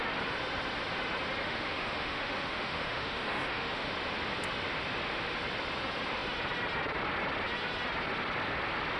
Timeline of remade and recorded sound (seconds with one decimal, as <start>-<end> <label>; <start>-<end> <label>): 0.0-1.4 recorded; 1.4-3.9 remade; 3.9-9.0 recorded